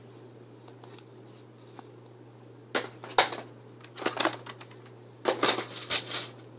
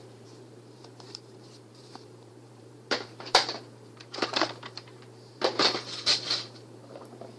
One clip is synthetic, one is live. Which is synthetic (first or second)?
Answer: second